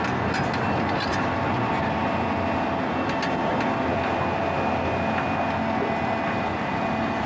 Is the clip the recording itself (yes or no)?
yes